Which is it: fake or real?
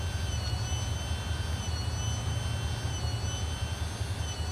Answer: real